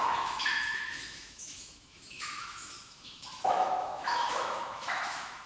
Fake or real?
fake